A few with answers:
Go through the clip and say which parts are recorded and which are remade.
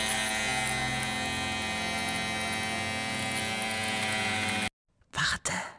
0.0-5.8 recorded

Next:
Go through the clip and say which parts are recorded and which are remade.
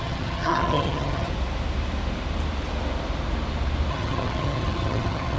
0.0-1.3 remade; 1.3-3.9 recorded; 3.9-5.4 remade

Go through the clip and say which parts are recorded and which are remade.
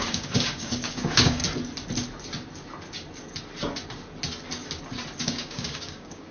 0.0-1.4 remade; 1.4-5.2 recorded; 5.2-6.3 remade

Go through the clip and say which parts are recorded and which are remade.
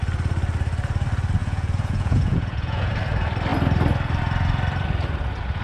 0.0-1.4 recorded; 1.4-2.9 remade; 2.9-5.6 recorded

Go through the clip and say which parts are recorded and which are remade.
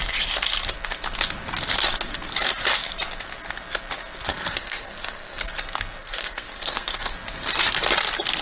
0.0-4.3 recorded; 4.3-5.4 remade; 5.4-6.0 recorded; 6.0-7.1 remade; 7.1-8.4 recorded